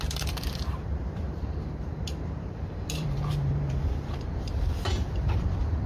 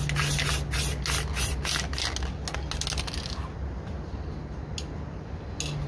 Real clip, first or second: second